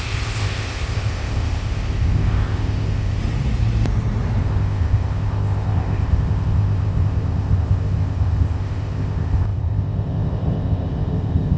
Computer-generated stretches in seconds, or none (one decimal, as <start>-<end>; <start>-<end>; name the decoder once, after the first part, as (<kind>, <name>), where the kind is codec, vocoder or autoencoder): 0.0-3.2 (codec, ZipCodec); 4.4-11.6

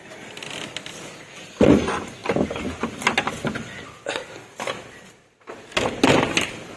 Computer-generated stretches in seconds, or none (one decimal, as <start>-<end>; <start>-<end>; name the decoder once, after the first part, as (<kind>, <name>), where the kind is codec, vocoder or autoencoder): none

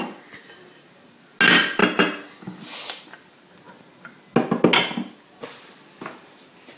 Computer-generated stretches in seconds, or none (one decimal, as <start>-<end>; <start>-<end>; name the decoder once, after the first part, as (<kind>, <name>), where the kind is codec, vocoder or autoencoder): none

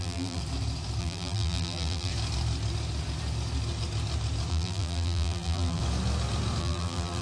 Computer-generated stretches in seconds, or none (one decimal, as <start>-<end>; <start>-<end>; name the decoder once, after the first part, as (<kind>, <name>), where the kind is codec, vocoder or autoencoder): 0.0-0.4 (vocoder, BigVGAN v2); 1.0-2.1; 4.5-5.8; 6.6-7.2

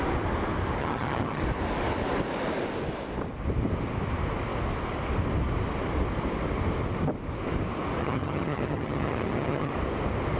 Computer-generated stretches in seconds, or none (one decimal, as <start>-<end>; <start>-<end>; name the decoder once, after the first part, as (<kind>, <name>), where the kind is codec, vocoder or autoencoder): 0.8-1.4 (vocoder, HiFi-GAN); 8.0-9.7

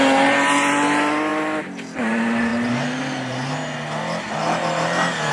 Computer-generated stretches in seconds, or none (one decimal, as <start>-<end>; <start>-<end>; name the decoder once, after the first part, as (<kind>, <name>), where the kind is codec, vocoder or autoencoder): none

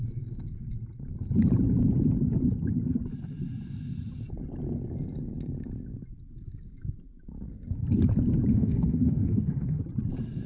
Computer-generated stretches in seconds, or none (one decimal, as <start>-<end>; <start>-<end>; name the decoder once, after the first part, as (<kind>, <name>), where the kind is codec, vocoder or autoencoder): 8.5-9.8 (autoencoder, DAC-VAE)